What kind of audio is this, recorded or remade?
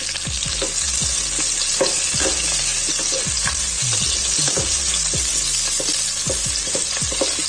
recorded